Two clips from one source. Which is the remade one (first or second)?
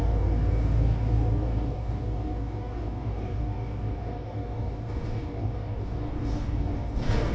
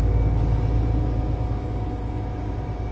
first